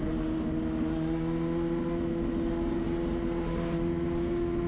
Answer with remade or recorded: recorded